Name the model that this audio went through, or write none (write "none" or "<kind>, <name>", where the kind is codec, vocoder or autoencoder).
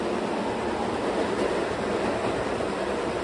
none